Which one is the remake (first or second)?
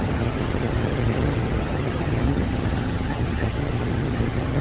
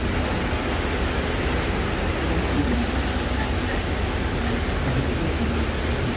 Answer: first